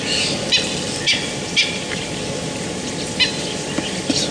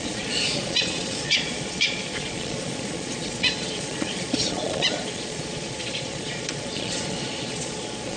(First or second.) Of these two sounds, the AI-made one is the second